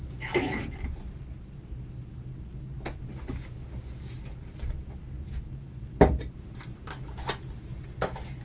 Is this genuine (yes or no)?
yes